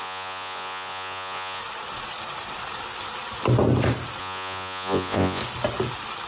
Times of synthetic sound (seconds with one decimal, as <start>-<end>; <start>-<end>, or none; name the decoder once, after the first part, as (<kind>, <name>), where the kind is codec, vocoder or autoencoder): 0.0-1.6 (vocoder, Vocos); 4.2-5.4

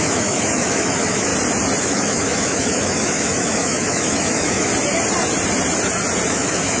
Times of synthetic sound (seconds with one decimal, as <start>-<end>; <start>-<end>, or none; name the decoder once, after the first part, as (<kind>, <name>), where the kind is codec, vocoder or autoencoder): 0.0-1.3 (autoencoder, DAC-VAE); 1.8-4.7; 6.3-6.8

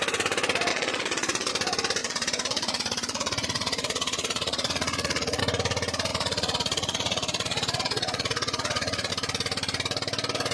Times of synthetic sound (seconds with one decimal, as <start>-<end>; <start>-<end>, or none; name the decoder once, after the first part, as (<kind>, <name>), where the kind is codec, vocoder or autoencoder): 0.7-1.5 (vocoder, Vocos); 2.0-5.4; 6.1-9.1

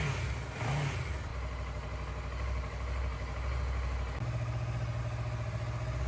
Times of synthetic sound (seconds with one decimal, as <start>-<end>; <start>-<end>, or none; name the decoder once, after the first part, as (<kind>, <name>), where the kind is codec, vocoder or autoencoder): none

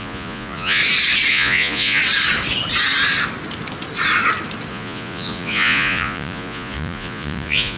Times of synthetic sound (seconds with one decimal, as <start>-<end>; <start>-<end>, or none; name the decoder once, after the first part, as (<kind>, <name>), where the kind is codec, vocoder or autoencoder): 0.0-0.8 (vocoder, Vocos); 1.3-2.0; 4.7-7.8